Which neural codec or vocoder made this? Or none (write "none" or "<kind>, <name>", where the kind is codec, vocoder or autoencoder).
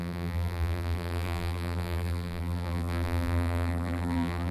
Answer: vocoder, BigVGAN v2